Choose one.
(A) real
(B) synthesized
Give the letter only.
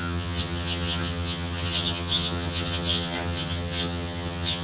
B